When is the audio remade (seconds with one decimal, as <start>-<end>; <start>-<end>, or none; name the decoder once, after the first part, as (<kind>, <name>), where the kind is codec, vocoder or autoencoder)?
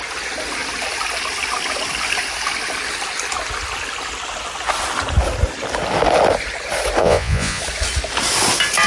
7.0-7.6 (vocoder, Vocos)